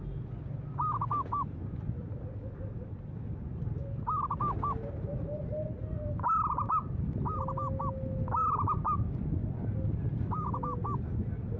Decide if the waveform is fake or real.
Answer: real